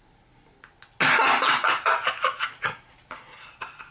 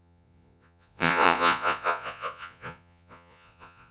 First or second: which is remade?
second